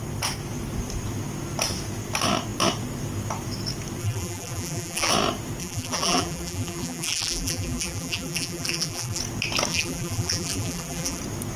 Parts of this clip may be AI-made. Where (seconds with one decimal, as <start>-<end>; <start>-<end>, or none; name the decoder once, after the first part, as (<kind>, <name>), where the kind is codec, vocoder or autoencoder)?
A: 4.0-5.1 (vocoder, BigVGAN v2); 5.6-9.2; 9.7-11.2